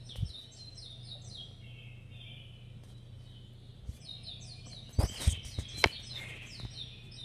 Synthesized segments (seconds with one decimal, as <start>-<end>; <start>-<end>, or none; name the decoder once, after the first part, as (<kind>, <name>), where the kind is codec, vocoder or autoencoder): none